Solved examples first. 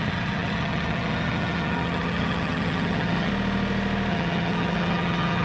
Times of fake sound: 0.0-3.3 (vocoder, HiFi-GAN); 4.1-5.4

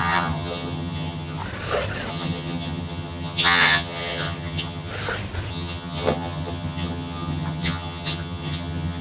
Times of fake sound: 0.0-1.4 (vocoder, HiFi-GAN); 2.1-4.9; 5.5-9.0